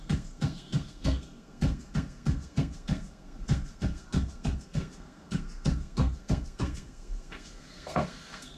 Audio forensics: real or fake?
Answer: fake